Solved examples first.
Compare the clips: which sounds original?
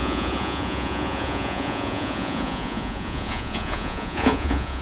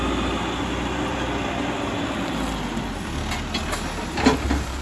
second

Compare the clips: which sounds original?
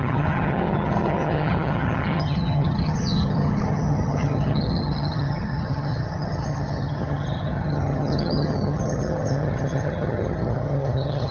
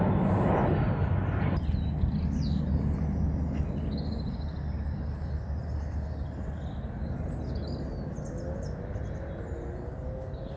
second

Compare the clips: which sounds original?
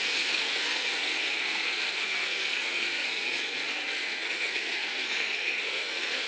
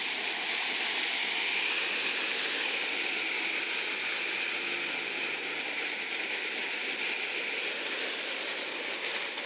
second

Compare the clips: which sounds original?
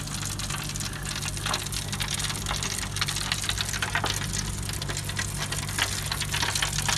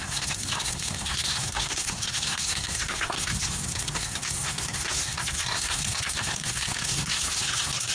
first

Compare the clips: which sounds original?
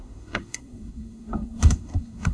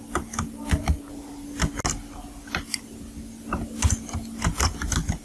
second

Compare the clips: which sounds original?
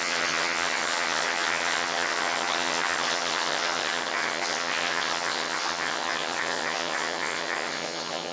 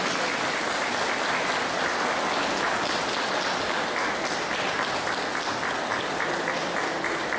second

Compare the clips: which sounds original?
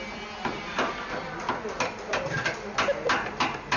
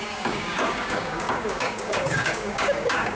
first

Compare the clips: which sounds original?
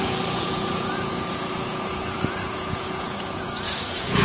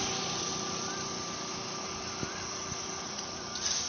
second